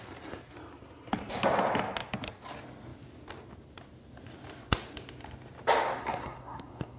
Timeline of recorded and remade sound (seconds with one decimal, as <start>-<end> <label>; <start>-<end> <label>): 0.0-6.0 recorded; 6.0-7.0 remade